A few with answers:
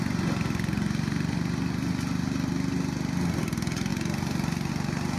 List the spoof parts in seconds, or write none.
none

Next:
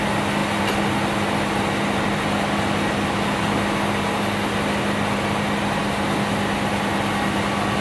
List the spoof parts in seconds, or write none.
none

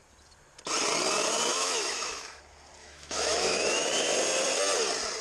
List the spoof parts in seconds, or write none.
1.5-2.4 (autoencoder, DAC-VAE); 2.8-3.9

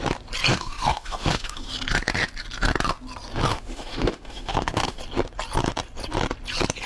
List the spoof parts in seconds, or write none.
0.5-1.7 (autoencoder, DAC-VAE); 3.5-5.0

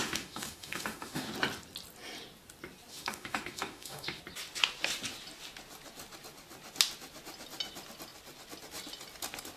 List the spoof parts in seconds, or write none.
0.0-1.3 (autoencoder, DAC-VAE); 2.9-4.2

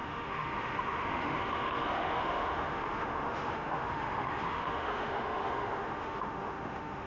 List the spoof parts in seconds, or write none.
0.0-7.1 (autoencoder, DAC-VAE)

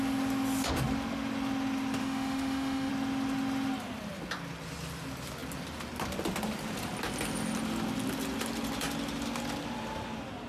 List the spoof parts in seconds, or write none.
2.0-2.9 (autoencoder, DAC-VAE)